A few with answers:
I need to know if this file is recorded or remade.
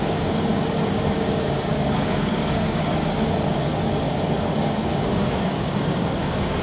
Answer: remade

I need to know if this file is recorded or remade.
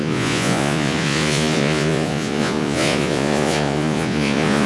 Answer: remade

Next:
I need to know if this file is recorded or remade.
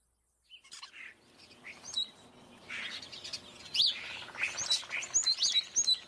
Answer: recorded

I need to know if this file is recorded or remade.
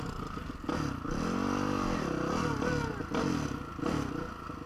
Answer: recorded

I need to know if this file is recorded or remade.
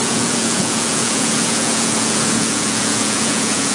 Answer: remade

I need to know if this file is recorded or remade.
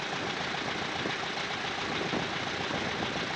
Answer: recorded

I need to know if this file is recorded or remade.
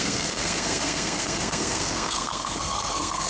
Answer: remade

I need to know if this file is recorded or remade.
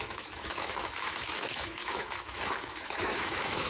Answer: remade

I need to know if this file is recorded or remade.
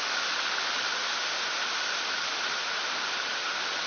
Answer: recorded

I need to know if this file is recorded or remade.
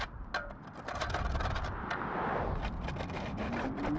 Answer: recorded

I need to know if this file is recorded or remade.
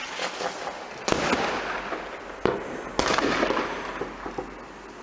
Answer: recorded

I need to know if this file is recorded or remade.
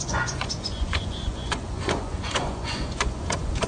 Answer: remade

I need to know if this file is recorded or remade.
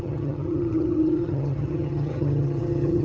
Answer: remade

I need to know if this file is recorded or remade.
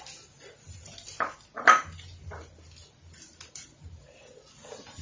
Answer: recorded